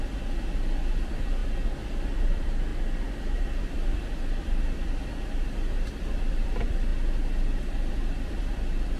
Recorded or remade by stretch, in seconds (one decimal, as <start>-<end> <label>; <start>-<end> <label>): 0.0-1.4 remade; 1.4-2.2 recorded; 2.2-9.0 remade